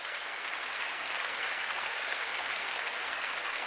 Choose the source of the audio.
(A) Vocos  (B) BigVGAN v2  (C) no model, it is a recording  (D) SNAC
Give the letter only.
D